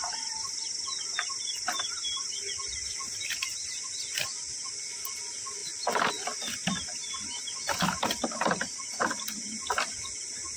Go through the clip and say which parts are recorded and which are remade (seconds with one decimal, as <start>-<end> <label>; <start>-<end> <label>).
0.0-10.6 recorded